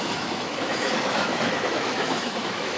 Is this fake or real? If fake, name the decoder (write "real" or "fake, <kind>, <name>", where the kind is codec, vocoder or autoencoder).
fake, autoencoder, DAC-VAE